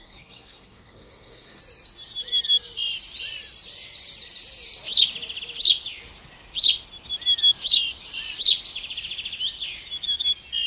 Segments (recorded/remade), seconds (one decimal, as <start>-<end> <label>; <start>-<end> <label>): 0.0-1.6 remade; 1.6-10.7 recorded